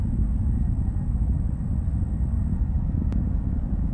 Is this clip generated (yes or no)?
no